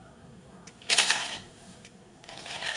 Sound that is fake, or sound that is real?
fake